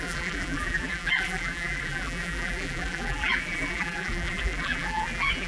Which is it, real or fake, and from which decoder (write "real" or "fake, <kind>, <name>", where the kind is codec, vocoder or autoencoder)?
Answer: fake, vocoder, BigVGAN v2